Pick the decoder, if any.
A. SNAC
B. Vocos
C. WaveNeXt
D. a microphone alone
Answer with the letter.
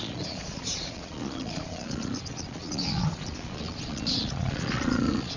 B